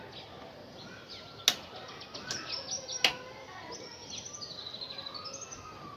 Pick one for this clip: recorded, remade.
recorded